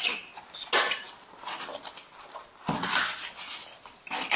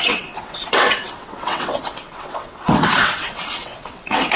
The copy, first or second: second